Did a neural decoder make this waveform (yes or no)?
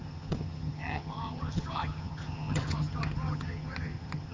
yes